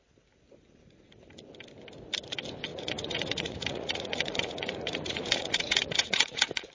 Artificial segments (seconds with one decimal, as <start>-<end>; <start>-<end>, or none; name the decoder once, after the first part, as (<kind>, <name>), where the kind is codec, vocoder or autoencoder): 2.7-6.7 (vocoder, Vocos)